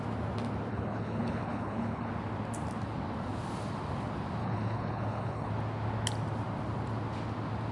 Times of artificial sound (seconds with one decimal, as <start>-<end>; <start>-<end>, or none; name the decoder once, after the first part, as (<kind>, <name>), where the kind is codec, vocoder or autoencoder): 0.7-2.1 (codec, HILCodec); 4.4-5.5